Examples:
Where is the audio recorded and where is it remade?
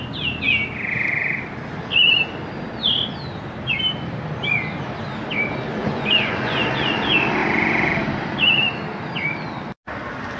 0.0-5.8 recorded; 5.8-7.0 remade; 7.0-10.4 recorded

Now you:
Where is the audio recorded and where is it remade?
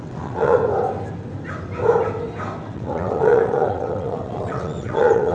0.0-0.6 remade; 0.6-2.6 recorded; 2.6-5.3 remade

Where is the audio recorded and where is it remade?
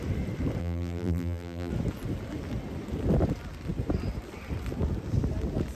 0.0-0.6 recorded; 0.6-1.7 remade; 1.7-5.7 recorded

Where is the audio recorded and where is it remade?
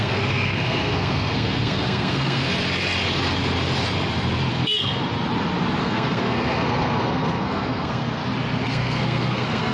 0.0-2.5 remade; 2.5-4.5 recorded; 4.5-5.0 remade; 5.0-5.8 recorded; 5.8-8.2 remade; 8.2-8.7 recorded; 8.7-9.7 remade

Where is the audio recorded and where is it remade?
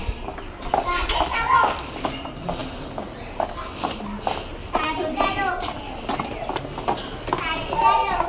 0.0-8.3 recorded